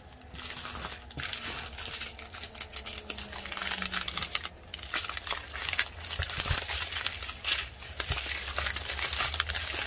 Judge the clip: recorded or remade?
recorded